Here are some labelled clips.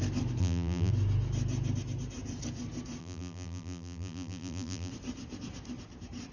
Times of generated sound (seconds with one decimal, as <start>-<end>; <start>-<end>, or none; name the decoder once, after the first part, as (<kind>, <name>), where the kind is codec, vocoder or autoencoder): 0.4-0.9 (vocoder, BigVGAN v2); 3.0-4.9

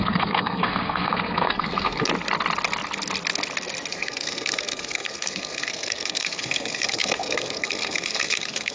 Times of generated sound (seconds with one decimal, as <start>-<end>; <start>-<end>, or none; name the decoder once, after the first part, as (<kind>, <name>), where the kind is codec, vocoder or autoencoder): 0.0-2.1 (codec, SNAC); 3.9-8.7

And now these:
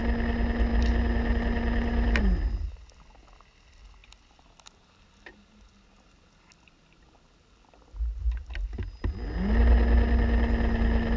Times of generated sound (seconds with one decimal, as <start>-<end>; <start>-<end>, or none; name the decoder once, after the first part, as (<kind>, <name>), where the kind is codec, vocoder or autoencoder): none

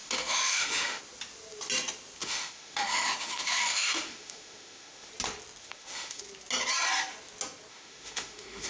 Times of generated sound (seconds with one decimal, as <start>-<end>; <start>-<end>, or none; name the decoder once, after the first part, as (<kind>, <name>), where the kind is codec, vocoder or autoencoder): 0.0-1.0 (autoencoder, DAC-VAE); 2.2-5.1; 5.6-6.2; 7.7-8.7

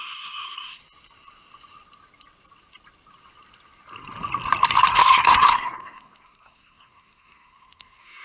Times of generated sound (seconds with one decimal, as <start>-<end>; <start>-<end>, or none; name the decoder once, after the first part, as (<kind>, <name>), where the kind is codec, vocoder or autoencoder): 0.0-0.8 (codec, SNAC); 4.9-8.2

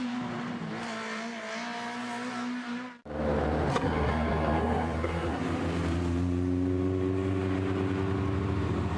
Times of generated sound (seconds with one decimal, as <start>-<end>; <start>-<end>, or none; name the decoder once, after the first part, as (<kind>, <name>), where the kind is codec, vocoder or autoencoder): 3.7-5.4 (codec, SNAC)

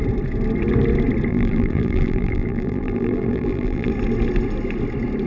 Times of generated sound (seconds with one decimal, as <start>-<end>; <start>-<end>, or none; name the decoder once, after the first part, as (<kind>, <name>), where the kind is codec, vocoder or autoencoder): 1.3-3.9 (vocoder, BigVGAN v2)